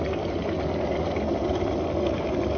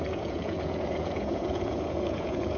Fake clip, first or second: second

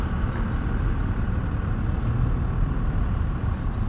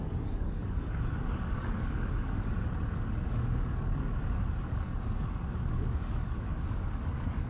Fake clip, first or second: second